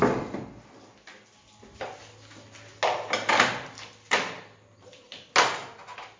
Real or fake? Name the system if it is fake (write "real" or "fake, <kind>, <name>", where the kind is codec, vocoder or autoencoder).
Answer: real